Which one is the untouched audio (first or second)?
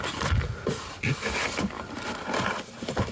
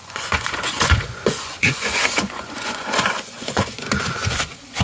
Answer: first